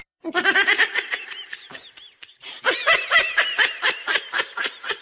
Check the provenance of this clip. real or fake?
fake